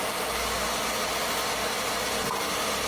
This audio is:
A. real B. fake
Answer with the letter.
A